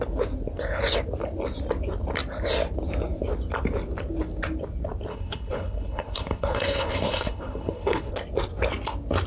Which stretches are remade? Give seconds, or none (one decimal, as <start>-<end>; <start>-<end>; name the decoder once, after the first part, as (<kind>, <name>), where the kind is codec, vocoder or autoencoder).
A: 5.1-8.1 (codec, HILCodec)